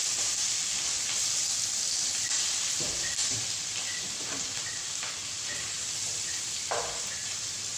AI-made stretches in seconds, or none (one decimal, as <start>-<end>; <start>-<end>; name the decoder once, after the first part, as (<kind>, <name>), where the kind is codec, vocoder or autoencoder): 1.4-7.8 (vocoder, BigVGAN v2)